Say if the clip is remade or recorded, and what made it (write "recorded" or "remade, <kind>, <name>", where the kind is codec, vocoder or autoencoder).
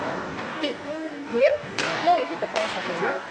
remade, codec, DAC